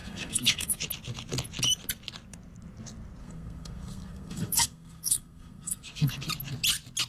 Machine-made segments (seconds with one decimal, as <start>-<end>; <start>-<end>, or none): 0.0-0.8; 3.2-6.3